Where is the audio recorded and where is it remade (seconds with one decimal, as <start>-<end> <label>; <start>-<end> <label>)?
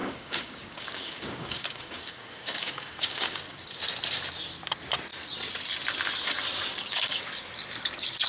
0.0-3.7 remade; 3.7-6.7 recorded; 6.7-7.3 remade; 7.3-8.3 recorded